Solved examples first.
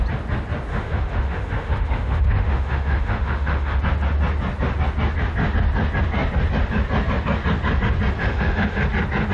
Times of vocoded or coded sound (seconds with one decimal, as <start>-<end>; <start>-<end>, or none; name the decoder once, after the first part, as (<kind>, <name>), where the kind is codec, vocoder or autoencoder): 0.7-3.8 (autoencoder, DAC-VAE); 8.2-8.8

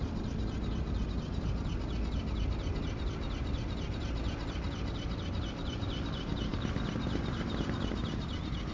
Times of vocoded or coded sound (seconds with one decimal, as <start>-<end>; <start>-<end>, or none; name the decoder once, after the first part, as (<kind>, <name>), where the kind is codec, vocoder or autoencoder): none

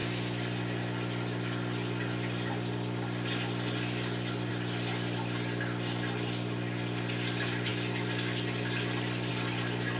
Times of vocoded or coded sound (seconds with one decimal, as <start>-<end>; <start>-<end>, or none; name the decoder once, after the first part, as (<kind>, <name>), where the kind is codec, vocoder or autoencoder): none